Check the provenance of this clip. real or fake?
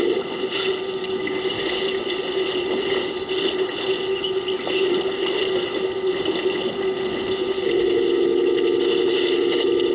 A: real